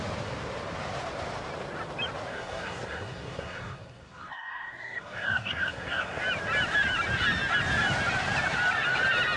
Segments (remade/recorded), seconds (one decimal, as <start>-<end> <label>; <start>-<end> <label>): 0.0-2.3 recorded; 2.3-6.2 remade; 6.2-9.4 recorded